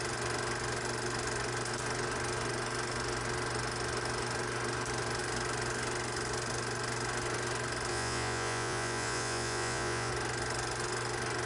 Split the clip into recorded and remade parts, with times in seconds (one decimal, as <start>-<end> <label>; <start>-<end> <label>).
0.0-7.9 recorded; 7.9-10.1 remade; 10.1-11.4 recorded